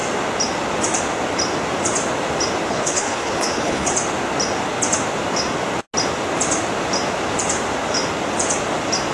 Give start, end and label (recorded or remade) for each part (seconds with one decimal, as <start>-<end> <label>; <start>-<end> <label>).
0.0-2.7 recorded; 2.7-3.9 remade; 3.9-9.1 recorded